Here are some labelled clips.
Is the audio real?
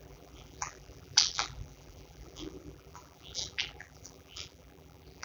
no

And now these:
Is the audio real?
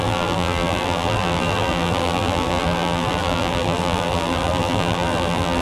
no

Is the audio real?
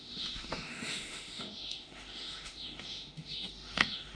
no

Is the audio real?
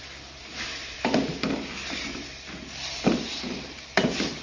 yes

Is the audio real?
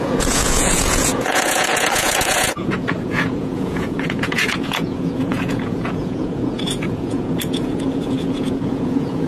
no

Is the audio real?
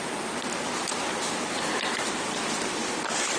no